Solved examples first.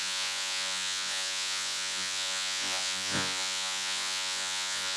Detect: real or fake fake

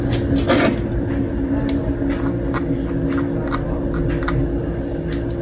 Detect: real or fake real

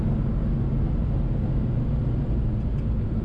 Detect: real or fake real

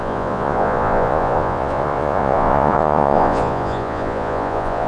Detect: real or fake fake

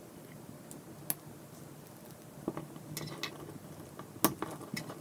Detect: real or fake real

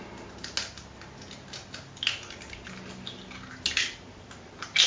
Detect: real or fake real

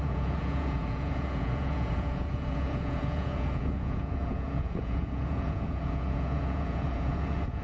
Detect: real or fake fake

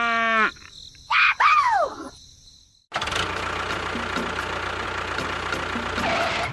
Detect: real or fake real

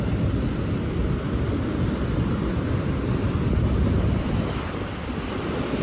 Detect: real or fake real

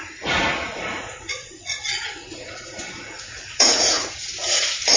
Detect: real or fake fake